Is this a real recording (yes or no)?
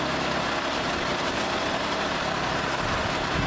no